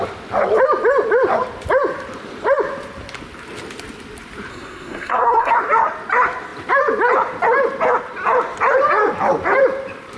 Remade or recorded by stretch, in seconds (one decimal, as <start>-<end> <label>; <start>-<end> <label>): 0.0-4.5 recorded; 4.5-5.5 remade; 5.5-10.2 recorded